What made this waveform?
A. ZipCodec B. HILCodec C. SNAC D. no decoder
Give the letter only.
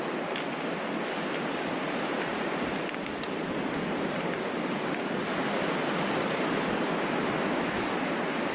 D